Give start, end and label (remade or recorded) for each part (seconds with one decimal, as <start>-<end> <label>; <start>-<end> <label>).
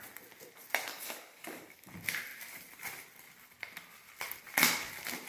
0.0-0.9 recorded; 0.9-1.9 remade; 1.9-5.3 recorded